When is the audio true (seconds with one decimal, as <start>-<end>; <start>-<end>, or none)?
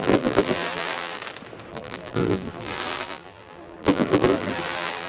1.2-1.7